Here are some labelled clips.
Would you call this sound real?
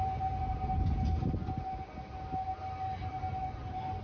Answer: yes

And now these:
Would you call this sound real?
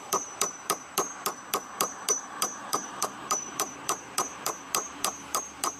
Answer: no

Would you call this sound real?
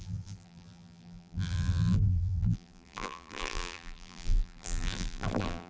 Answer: no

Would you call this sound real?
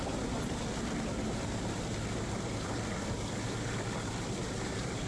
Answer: no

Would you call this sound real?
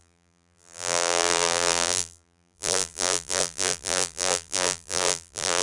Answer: no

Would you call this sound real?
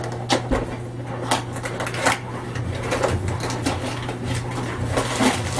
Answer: yes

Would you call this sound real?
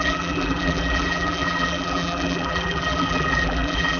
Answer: no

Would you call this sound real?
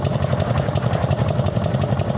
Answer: no